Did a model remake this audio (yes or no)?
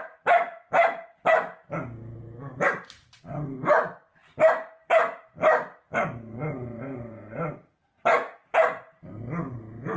no